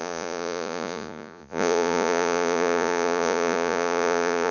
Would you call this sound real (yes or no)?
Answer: no